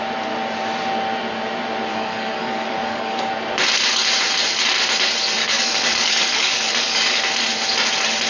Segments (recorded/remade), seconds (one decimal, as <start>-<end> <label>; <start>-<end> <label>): 0.0-1.9 recorded; 1.9-3.2 remade; 3.2-5.4 recorded; 5.4-7.2 remade; 7.2-8.3 recorded